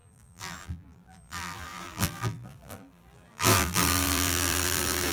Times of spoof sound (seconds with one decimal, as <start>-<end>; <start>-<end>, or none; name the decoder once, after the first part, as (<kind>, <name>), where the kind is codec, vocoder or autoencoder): 0.0-5.1 (vocoder, BigVGAN v2)